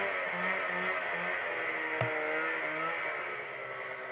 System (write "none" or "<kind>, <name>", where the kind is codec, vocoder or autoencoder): none